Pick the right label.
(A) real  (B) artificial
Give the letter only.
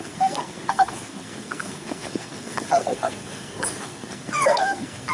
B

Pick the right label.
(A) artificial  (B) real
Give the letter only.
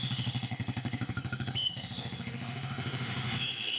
A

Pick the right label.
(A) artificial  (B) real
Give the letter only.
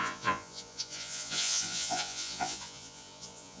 A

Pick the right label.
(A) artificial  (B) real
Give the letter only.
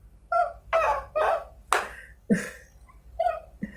B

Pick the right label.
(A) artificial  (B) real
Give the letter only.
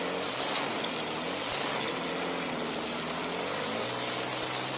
B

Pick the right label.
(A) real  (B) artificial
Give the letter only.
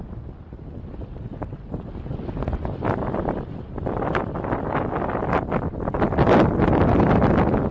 A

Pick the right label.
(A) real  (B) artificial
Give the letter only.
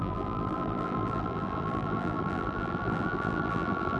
B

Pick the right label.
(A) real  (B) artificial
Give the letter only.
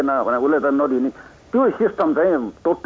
A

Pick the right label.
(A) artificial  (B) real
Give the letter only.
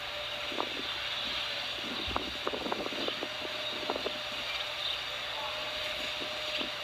B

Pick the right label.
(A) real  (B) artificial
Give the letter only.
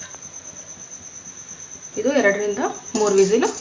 A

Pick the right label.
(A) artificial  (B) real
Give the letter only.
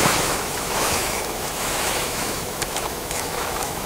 A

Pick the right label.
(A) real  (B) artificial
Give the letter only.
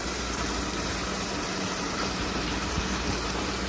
B